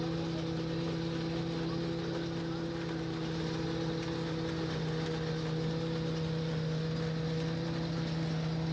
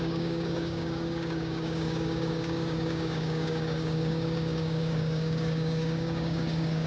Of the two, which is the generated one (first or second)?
second